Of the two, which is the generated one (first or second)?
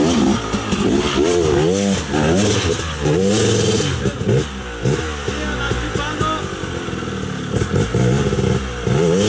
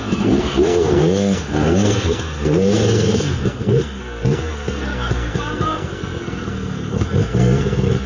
second